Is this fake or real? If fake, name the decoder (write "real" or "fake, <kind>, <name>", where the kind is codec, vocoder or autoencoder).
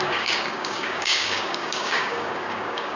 fake, codec, DAC